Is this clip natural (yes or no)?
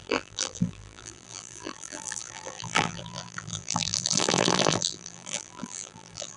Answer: no